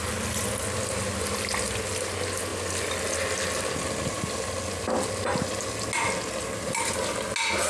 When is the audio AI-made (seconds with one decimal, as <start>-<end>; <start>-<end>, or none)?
none